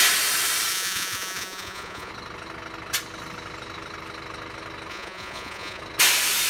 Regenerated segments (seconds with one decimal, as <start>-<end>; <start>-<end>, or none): 0.7-2.1; 4.9-5.8